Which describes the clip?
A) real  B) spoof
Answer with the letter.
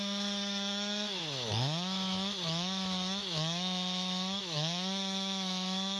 B